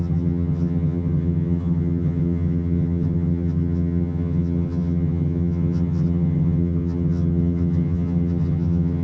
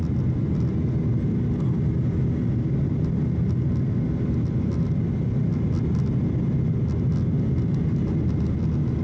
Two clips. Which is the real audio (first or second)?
second